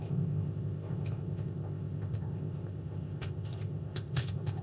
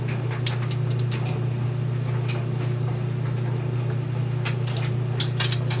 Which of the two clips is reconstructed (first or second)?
first